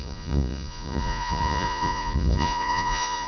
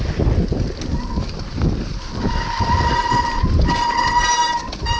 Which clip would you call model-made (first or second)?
first